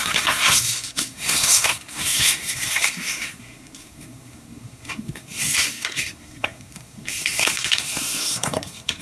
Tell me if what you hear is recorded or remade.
remade